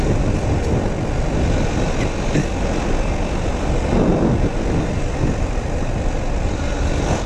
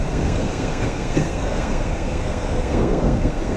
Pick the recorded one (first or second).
first